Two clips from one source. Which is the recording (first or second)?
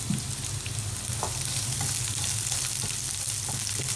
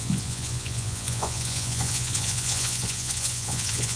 first